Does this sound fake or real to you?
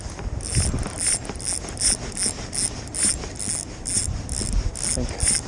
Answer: real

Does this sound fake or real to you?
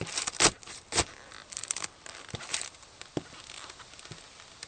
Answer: real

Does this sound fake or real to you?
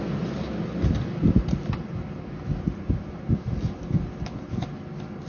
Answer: real